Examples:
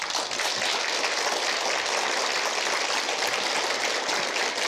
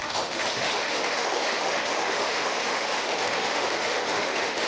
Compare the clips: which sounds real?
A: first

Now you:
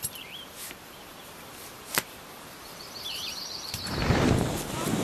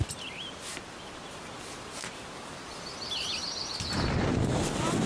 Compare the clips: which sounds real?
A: second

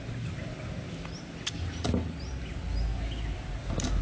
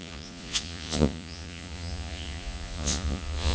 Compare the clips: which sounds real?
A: first